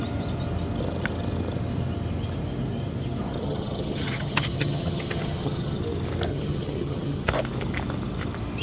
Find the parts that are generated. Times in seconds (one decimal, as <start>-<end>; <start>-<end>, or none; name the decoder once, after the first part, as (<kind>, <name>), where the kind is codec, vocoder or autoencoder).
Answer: 3.4-5.8 (vocoder, HiFi-GAN); 6.3-7.3